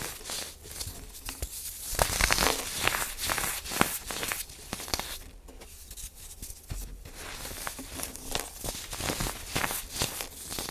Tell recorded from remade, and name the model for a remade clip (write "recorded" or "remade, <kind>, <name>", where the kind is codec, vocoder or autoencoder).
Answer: recorded